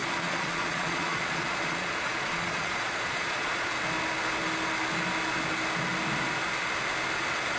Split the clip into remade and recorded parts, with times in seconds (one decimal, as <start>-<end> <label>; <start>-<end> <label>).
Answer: 0.0-3.7 remade; 3.7-7.6 recorded